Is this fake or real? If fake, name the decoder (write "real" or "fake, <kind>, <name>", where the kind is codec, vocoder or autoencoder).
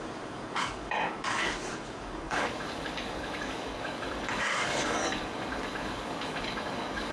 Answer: fake, codec, DAC